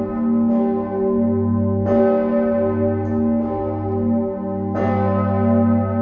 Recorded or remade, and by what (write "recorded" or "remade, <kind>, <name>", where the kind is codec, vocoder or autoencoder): recorded